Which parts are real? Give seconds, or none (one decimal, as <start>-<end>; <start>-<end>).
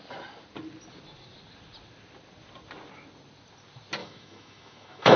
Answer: 0.0-4.0